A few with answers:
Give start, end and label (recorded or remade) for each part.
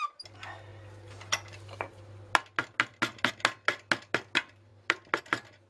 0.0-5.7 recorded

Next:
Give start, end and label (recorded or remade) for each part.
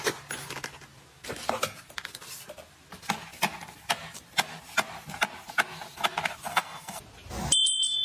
0.0-6.5 recorded; 6.5-7.0 remade; 7.0-8.0 recorded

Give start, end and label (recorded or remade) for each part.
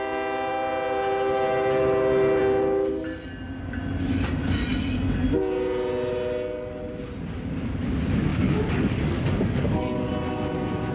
0.0-8.3 recorded; 8.3-10.1 remade; 10.1-10.9 recorded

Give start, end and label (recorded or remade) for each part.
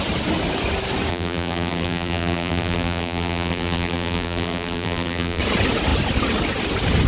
0.0-1.1 recorded; 1.1-5.4 remade; 5.4-7.1 recorded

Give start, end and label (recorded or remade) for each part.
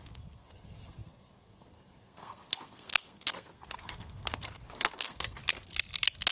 0.0-5.4 remade; 5.4-6.3 recorded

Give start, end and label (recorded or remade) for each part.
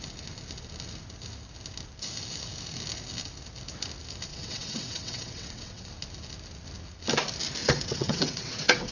0.0-4.3 recorded; 4.3-5.9 remade; 5.9-7.6 recorded; 7.6-8.9 remade